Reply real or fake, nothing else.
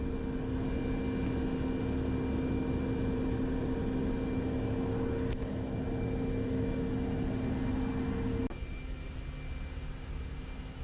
real